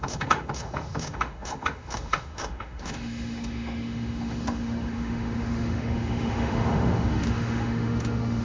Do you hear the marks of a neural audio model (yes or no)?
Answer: yes